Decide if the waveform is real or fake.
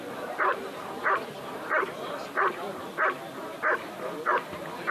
real